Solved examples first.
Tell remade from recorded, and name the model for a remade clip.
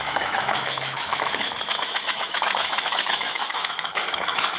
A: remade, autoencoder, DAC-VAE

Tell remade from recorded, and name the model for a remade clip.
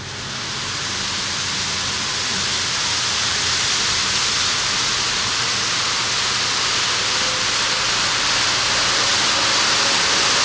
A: recorded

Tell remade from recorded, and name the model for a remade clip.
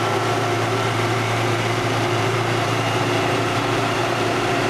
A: remade, vocoder, BigVGAN v2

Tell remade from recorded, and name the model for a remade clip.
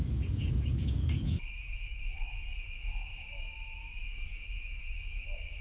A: remade, codec, DAC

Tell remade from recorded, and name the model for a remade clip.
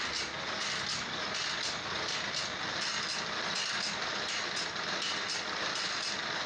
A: recorded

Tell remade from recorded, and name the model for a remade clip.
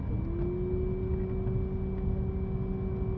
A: recorded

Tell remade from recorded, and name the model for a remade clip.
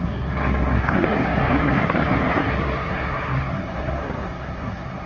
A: remade, codec, SNAC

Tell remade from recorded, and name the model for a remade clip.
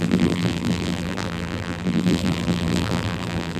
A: remade, vocoder, BigVGAN v2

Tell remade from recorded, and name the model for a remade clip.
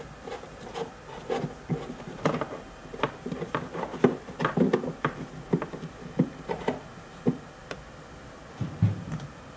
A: recorded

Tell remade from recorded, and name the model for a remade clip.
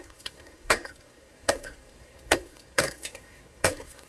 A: remade, codec, SNAC